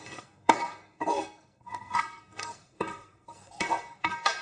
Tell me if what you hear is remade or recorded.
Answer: remade